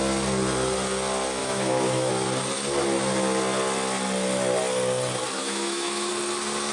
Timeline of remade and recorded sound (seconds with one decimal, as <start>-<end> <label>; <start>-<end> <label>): 0.0-1.4 recorded; 1.4-2.1 remade; 2.1-5.4 recorded; 5.4-6.1 remade; 6.1-6.7 recorded